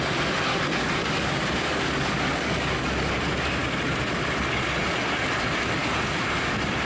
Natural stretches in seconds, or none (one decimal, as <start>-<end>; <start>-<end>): 0.0-0.5; 3.2-6.9